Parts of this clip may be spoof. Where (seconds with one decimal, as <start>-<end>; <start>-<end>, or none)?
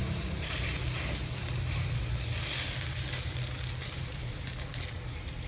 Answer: 0.0-0.8; 3.8-5.5